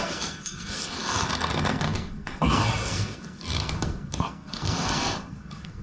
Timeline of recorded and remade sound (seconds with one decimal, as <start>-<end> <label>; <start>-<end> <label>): 0.0-5.8 remade